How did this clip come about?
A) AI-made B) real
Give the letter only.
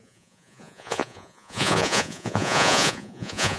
A